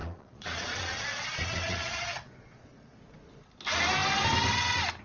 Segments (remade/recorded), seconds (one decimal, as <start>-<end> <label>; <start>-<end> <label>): 0.0-3.0 remade; 3.0-5.0 recorded